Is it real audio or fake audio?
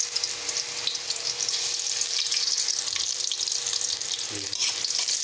real